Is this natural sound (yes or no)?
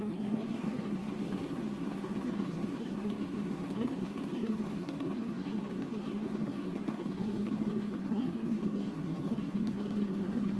no